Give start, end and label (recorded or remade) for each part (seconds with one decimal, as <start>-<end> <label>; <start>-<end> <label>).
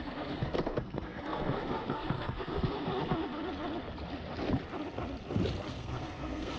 0.0-2.9 remade; 2.9-5.7 recorded; 5.7-6.6 remade